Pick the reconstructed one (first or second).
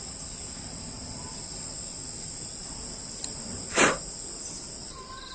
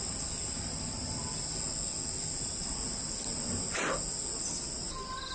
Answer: first